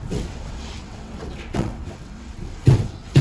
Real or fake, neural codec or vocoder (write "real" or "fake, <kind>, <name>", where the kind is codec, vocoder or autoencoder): fake, vocoder, WaveNeXt